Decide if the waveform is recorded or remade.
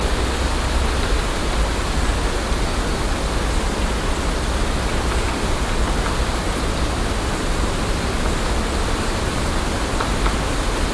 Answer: recorded